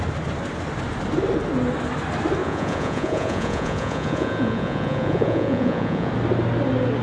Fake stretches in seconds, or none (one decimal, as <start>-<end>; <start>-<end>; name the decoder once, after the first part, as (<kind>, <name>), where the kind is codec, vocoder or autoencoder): 2.4-6.1 (vocoder, Vocos)